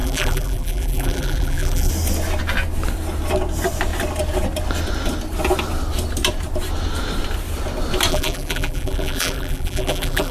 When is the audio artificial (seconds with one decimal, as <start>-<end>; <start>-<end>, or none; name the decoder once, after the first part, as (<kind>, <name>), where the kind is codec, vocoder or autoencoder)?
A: 0.0-1.9 (vocoder, BigVGAN v2); 8.1-10.3